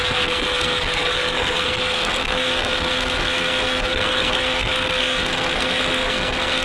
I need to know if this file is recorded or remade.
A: remade